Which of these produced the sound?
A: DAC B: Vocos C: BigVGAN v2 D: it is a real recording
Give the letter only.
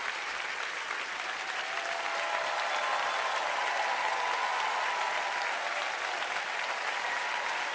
D